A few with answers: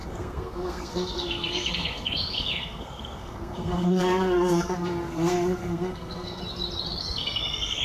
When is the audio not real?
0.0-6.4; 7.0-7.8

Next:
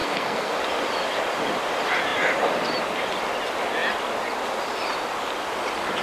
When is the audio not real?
0.0-0.6